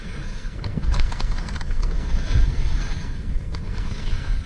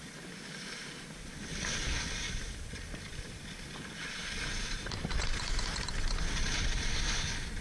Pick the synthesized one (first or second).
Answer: first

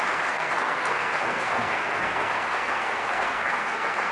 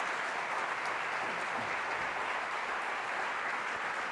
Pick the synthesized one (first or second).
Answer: first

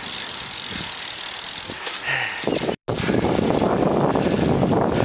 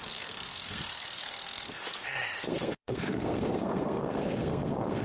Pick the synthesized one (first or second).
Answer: second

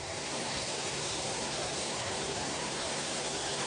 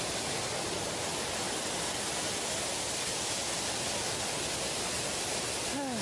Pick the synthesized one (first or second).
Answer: first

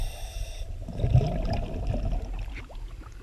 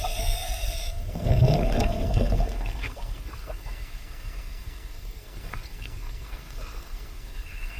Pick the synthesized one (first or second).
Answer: second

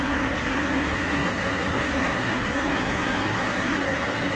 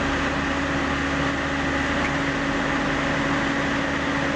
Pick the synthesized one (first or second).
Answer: first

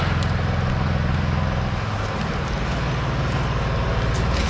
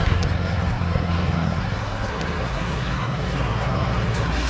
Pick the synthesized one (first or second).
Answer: second